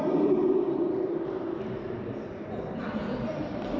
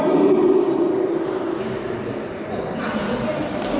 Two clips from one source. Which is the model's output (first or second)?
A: first